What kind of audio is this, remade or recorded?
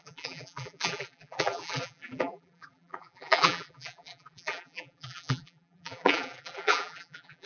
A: remade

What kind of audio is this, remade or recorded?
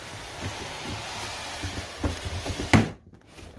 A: recorded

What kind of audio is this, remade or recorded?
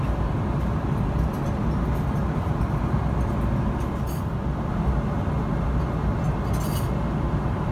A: recorded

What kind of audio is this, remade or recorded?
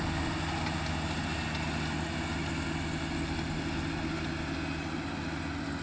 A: recorded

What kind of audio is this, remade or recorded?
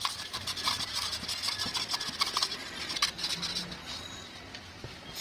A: recorded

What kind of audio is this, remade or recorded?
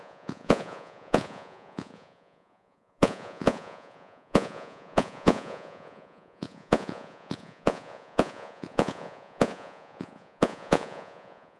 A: remade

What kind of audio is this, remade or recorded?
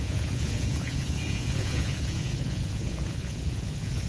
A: remade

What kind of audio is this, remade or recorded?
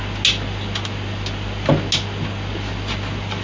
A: recorded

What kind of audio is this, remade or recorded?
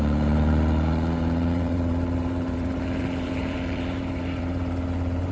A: remade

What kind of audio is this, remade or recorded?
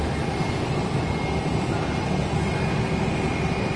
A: recorded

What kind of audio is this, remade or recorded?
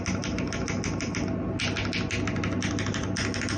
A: recorded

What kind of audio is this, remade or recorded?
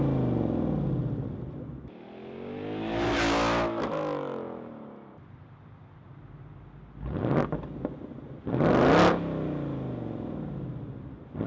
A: recorded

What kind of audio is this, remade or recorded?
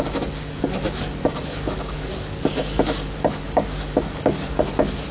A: remade